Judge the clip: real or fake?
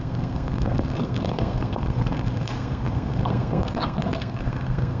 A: fake